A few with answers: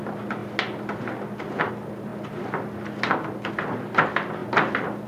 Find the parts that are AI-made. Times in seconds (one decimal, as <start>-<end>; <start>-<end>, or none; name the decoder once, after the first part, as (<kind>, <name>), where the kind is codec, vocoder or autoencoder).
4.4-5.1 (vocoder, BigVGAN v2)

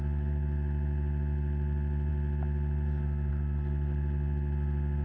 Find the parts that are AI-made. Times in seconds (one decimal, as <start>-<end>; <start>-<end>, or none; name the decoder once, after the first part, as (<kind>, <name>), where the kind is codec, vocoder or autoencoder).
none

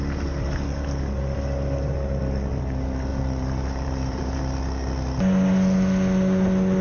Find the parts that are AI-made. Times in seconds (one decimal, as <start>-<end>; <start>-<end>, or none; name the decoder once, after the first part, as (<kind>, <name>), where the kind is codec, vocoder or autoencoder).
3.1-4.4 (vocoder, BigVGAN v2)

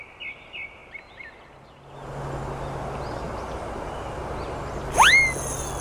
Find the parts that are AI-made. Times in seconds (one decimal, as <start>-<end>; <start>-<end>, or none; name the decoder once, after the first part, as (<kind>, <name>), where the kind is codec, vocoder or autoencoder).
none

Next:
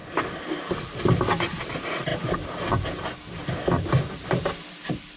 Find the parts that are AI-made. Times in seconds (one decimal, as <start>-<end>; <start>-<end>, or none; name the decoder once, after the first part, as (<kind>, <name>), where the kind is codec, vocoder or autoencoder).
0.7-5.2 (vocoder, BigVGAN v2)